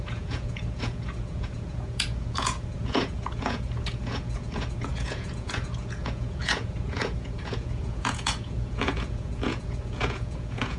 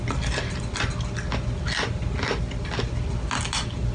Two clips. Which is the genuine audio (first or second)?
second